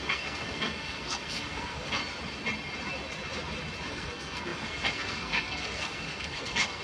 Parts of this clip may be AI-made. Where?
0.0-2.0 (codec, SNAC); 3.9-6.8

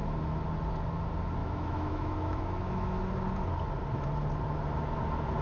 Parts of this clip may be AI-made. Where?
1.4-3.0 (autoencoder, DAC-VAE)

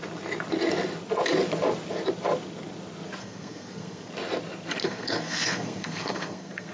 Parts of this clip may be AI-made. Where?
3.2-4.1 (codec, SNAC); 4.8-6.7

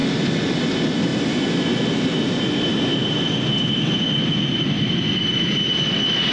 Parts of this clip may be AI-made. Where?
none

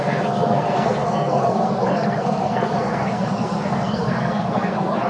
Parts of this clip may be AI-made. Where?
0.0-5.1 (codec, SNAC)

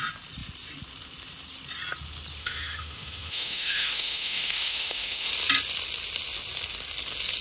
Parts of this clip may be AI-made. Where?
2.4-5.3 (autoencoder, DAC-VAE)